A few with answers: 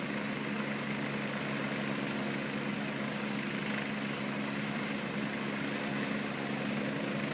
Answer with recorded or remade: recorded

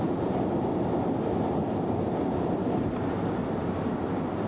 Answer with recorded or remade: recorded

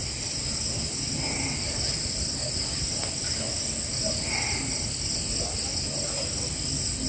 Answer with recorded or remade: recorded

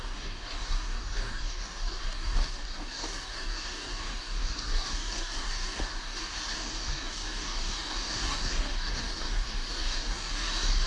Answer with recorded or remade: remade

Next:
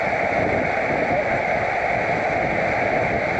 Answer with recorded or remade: recorded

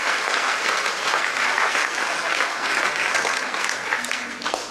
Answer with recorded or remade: remade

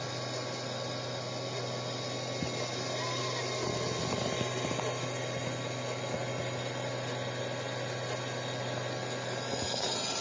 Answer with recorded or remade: recorded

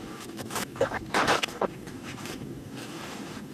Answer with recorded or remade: remade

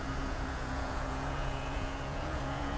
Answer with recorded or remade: remade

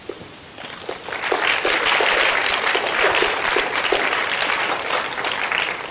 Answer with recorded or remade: remade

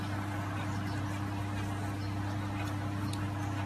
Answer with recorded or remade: recorded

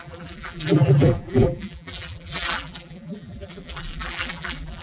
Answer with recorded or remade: remade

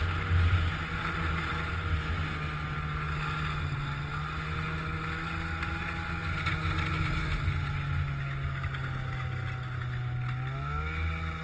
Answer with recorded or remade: recorded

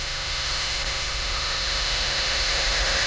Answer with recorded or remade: remade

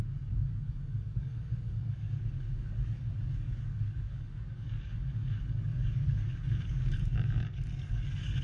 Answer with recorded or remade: remade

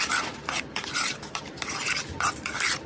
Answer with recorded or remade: recorded